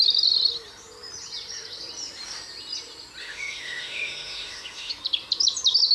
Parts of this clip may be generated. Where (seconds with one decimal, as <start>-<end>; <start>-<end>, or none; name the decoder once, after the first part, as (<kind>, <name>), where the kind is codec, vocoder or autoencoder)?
3.2-4.9 (autoencoder, DAC-VAE)